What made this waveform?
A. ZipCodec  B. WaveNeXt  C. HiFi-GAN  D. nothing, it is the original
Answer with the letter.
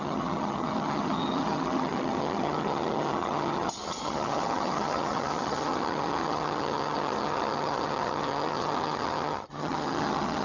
C